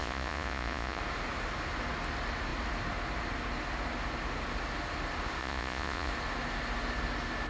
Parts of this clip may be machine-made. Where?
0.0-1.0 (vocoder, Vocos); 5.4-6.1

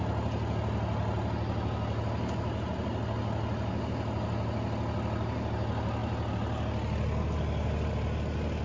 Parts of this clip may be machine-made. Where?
none

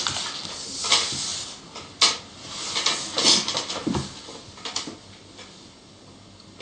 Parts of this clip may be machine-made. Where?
none